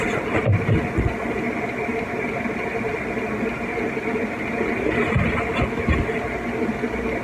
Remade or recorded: recorded